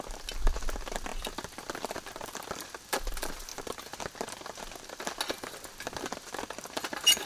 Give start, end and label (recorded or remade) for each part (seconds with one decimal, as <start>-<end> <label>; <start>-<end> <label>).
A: 0.0-7.3 recorded